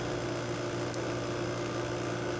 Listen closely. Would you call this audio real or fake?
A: real